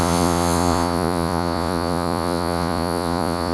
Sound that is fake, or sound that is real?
fake